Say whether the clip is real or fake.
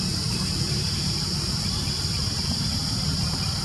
real